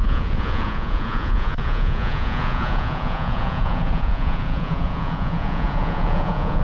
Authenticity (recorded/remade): remade